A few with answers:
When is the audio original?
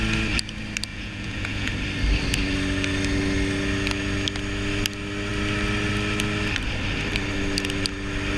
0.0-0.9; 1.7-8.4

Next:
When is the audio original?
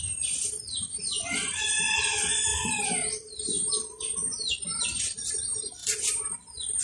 0.0-6.8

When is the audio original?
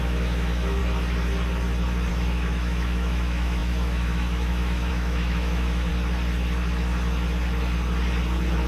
0.8-2.1; 5.9-8.7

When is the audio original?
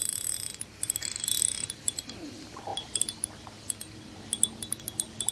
2.7-5.3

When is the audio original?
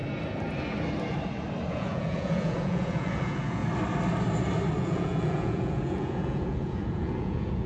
0.0-1.7; 3.6-4.8